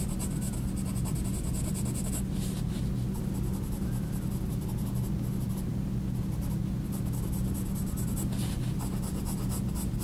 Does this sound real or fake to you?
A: real